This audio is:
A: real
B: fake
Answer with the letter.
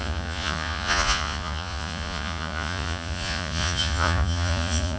B